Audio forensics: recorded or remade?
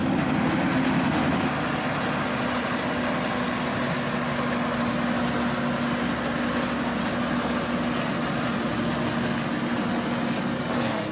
recorded